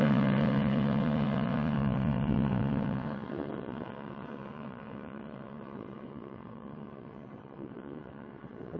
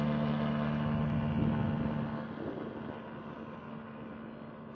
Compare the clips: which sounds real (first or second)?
second